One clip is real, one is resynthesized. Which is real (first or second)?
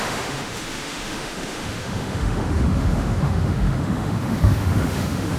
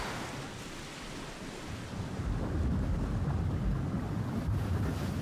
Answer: second